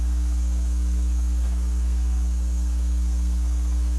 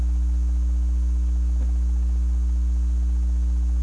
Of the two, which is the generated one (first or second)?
first